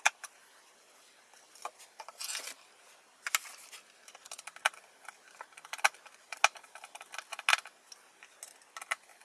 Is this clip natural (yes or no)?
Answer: yes